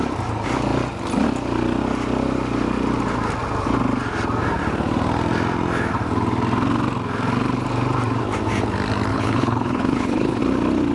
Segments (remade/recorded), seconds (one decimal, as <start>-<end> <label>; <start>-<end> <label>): 0.0-9.1 recorded; 9.1-10.4 remade; 10.4-10.9 recorded